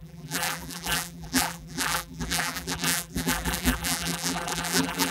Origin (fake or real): fake